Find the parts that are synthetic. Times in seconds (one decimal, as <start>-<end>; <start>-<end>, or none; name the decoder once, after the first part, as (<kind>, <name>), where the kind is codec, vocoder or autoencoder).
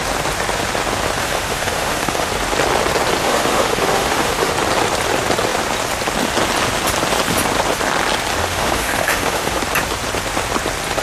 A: 1.2-2.3 (autoencoder, DAC-VAE); 3.2-4.5; 8.4-9.6